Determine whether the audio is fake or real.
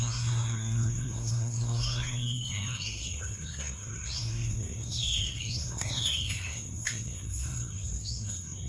fake